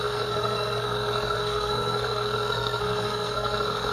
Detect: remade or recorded remade